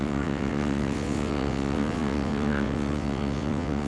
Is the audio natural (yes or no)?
no